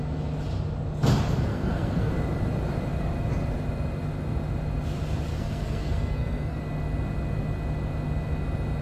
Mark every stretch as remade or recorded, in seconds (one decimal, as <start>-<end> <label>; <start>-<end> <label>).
0.0-1.5 recorded; 1.5-2.1 remade; 2.1-5.3 recorded; 5.3-6.6 remade; 6.6-8.8 recorded